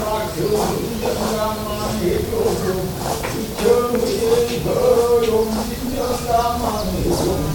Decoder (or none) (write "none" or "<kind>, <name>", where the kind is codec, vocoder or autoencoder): none